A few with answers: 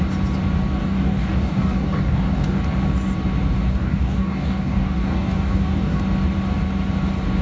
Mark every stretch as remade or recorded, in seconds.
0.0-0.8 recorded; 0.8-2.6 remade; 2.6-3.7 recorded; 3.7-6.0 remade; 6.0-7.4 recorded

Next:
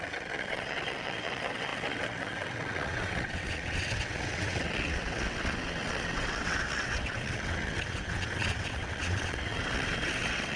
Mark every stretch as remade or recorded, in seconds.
0.0-10.6 remade

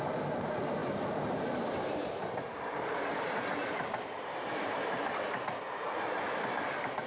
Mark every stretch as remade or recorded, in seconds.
0.0-7.1 recorded

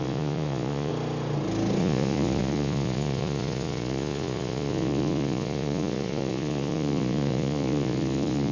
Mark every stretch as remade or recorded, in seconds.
0.0-0.9 remade; 0.9-1.8 recorded; 1.8-8.5 remade

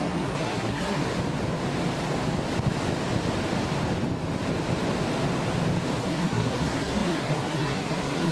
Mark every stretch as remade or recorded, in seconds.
0.0-1.0 remade; 1.0-6.0 recorded; 6.0-8.3 remade

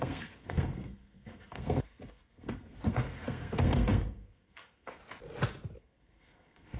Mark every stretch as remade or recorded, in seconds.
0.0-5.0 remade; 5.0-5.8 recorded; 5.8-6.8 remade

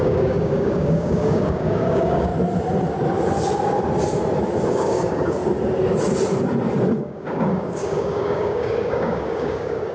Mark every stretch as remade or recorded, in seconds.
0.0-2.3 remade; 2.3-4.7 recorded; 4.7-5.4 remade; 5.4-7.0 recorded; 7.0-9.9 remade

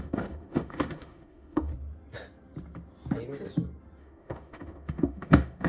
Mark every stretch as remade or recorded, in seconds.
0.0-1.7 remade; 1.7-4.0 recorded; 4.0-5.7 remade